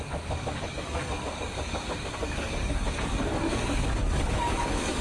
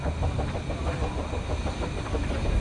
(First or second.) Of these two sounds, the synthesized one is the first